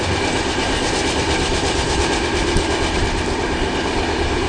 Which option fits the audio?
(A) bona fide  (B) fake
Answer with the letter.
A